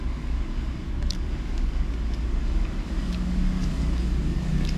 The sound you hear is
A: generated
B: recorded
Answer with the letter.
A